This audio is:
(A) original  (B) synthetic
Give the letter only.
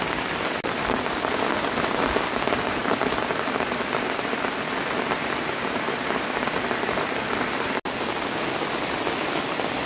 A